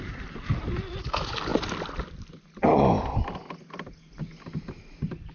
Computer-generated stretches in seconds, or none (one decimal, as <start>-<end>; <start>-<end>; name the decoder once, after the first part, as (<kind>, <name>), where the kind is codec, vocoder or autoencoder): none

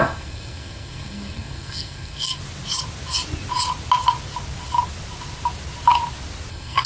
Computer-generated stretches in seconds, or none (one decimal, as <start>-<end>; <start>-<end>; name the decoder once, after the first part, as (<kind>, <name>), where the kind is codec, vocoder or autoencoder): 0.0-2.4 (codec, SNAC); 6.5-6.9

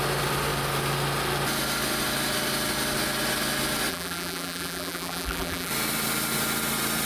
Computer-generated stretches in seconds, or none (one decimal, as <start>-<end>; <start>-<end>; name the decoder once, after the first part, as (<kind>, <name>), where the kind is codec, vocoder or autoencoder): 3.9-5.7 (vocoder, BigVGAN v2)